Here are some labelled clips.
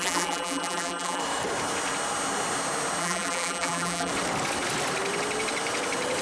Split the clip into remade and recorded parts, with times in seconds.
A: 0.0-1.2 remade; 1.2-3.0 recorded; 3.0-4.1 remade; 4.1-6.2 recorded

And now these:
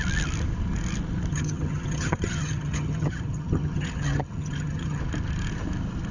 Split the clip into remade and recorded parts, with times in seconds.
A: 0.0-1.3 recorded; 1.3-5.0 remade; 5.0-6.1 recorded

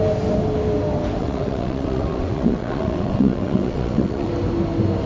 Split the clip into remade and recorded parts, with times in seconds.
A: 0.0-1.2 recorded; 1.2-4.3 remade; 4.3-5.1 recorded